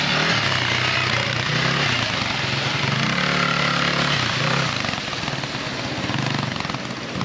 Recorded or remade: recorded